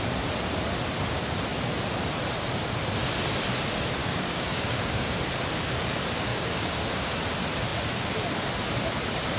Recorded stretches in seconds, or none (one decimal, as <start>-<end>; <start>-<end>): 0.0-4.0; 5.2-6.3; 6.8-9.4